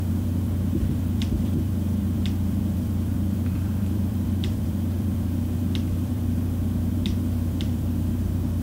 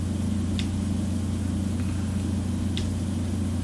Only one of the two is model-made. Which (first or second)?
first